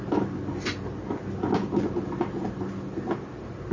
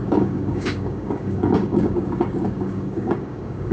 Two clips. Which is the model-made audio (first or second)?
second